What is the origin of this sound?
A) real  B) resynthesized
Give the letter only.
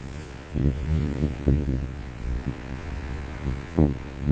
B